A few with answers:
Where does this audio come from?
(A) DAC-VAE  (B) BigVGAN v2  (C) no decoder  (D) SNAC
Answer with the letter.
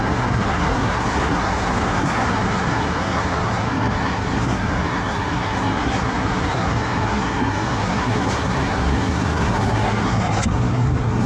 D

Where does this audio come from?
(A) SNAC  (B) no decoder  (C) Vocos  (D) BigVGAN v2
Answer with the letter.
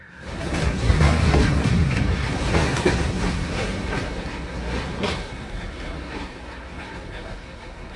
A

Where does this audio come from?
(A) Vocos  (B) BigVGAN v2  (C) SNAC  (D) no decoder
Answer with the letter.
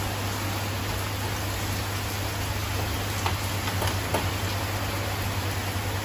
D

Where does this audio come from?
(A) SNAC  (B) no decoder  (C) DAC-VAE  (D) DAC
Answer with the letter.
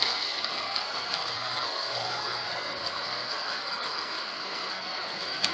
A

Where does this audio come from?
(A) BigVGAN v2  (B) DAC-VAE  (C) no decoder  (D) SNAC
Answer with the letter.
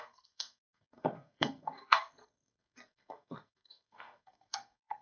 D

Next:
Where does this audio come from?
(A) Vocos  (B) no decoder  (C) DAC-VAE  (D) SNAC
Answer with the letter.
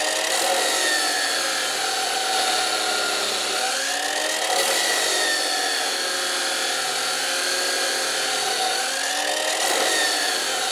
B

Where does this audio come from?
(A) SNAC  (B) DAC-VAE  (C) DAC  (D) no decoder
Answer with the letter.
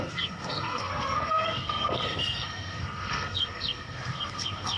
A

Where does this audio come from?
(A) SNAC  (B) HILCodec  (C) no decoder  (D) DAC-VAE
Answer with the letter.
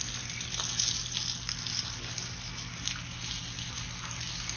C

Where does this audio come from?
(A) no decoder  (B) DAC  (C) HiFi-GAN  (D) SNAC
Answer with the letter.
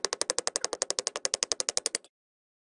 A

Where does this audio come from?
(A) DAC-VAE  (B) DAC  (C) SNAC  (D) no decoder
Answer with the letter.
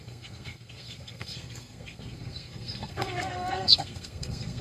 C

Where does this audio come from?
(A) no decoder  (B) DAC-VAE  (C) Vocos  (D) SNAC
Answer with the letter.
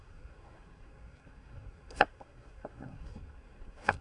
D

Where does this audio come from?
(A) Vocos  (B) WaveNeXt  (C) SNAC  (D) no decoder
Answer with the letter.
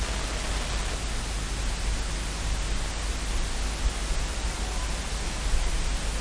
D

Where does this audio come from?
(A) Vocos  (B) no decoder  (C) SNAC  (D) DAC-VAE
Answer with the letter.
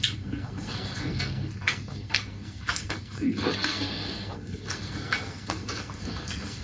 C